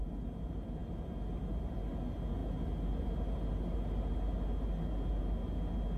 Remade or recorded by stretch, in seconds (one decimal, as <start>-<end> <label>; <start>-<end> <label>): 0.0-6.0 recorded